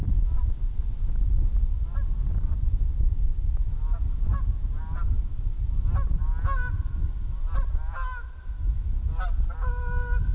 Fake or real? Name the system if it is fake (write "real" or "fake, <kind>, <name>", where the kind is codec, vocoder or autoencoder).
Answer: real